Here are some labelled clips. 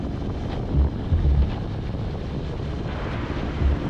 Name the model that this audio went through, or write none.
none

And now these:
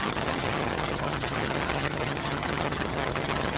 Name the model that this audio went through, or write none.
vocoder, HiFi-GAN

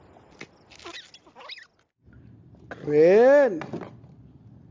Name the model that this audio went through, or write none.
none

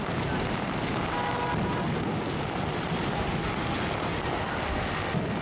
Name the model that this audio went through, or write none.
none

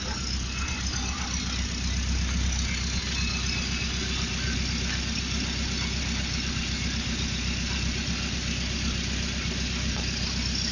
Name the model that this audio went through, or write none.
none